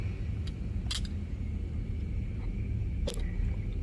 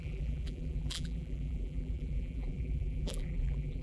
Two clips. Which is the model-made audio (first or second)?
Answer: second